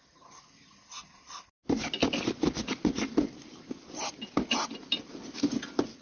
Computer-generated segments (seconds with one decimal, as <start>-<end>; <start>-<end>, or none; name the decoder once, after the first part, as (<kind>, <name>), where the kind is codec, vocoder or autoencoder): none